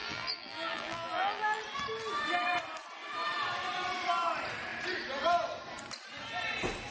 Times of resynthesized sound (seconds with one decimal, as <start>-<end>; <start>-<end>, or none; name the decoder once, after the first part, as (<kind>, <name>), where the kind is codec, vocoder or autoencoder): 0.0-1.6 (vocoder, BigVGAN v2)